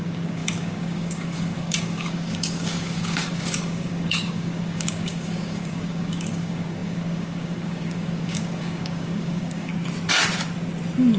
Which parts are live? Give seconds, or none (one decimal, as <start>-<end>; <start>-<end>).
9.7-11.2